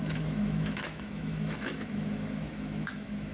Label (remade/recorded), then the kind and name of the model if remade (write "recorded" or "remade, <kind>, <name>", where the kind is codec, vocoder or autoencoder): remade, autoencoder, DAC-VAE